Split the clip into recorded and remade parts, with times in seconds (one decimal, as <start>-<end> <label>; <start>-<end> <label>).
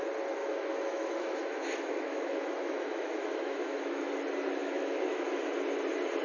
0.0-0.4 recorded; 0.4-4.1 remade; 4.1-4.6 recorded; 4.6-5.4 remade; 5.4-6.2 recorded